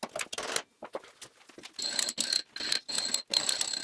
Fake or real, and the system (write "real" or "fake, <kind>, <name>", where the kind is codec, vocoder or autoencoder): real